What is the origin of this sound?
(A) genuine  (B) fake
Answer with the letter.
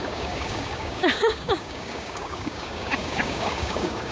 B